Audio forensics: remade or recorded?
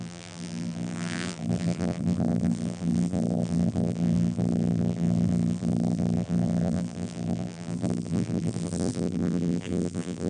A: remade